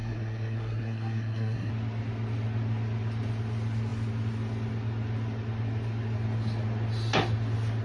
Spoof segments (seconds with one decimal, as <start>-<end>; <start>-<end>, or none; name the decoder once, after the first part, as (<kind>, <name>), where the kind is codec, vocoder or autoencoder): 0.0-1.7 (codec, SNAC)